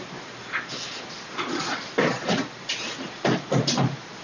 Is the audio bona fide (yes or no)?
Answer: yes